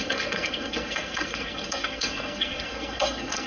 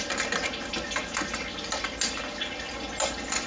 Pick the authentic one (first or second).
second